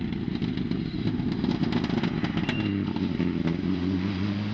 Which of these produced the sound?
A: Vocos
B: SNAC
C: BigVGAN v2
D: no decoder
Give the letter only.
C